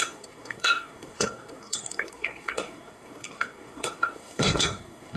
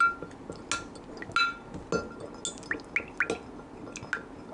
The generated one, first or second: first